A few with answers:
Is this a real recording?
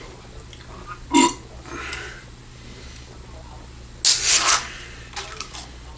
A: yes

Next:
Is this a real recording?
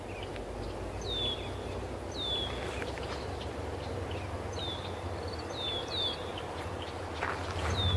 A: yes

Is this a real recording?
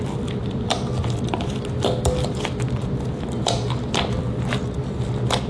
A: no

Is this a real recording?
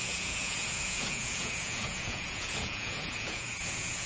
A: no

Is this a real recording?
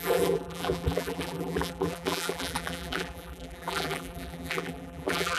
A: no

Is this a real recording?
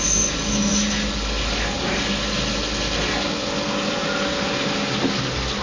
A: yes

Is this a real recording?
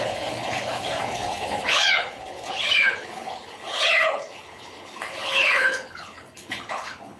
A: no